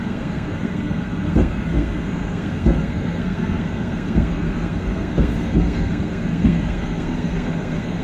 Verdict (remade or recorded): remade